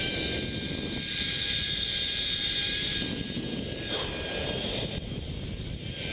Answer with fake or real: real